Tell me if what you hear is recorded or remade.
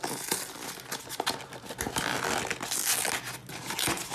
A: recorded